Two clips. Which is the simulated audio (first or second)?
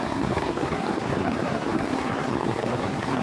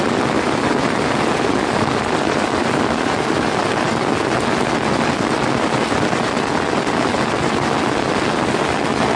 first